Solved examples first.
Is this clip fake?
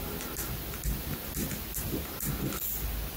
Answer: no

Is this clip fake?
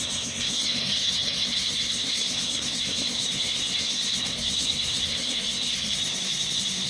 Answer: yes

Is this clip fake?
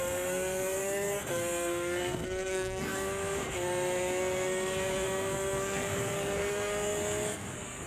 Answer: yes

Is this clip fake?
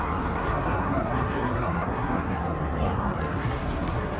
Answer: yes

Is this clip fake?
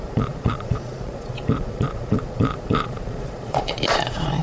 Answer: yes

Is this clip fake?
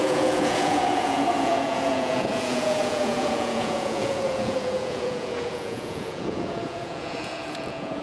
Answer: yes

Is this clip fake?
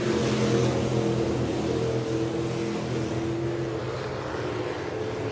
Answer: no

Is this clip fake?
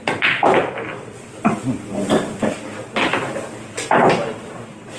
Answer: no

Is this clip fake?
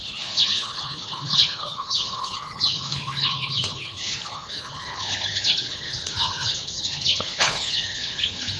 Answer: yes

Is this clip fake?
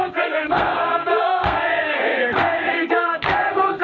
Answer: yes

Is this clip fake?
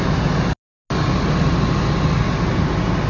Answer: no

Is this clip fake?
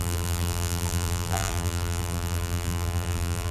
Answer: yes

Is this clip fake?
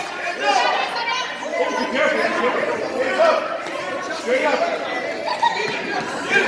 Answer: no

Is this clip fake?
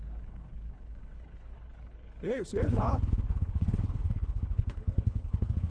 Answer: yes